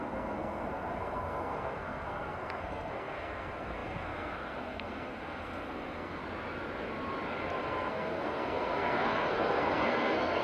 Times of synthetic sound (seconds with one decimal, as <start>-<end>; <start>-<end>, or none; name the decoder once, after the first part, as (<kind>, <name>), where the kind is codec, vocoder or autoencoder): 0.0-6.2 (codec, SNAC); 7.6-10.4